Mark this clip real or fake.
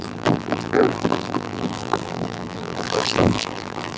fake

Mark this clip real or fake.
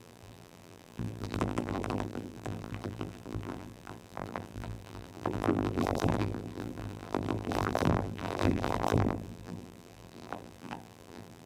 fake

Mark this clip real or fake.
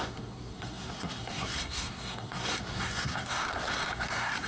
fake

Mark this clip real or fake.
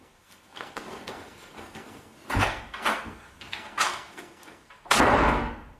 fake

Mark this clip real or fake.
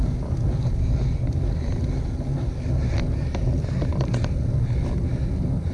real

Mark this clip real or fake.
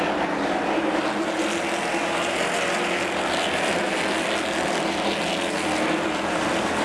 real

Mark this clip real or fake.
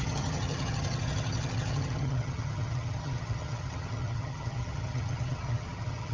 fake